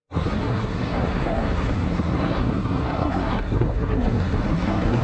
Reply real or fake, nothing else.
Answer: fake